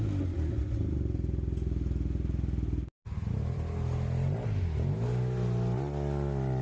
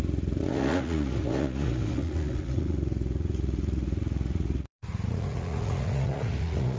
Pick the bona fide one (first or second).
first